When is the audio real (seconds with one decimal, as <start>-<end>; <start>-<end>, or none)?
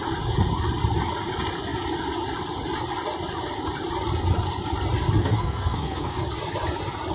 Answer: 0.0-5.2; 6.2-7.1